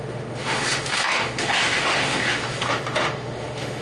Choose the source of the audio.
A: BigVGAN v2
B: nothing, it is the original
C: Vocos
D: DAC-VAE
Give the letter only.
D